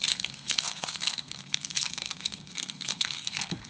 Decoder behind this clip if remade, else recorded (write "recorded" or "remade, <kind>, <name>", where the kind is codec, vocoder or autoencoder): remade, codec, SNAC